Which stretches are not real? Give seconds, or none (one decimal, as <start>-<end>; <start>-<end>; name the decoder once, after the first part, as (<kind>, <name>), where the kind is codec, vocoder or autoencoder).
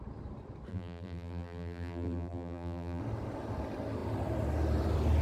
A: 0.7-3.0 (vocoder, BigVGAN v2)